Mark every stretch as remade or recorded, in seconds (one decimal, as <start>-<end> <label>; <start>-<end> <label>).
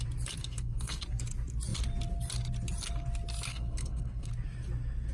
0.0-0.4 recorded; 0.4-1.0 remade; 1.0-3.5 recorded; 3.5-4.3 remade; 4.3-5.1 recorded